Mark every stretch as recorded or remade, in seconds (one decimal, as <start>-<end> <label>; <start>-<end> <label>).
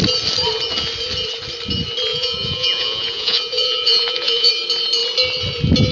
0.0-2.1 recorded; 2.1-4.5 remade; 4.5-5.9 recorded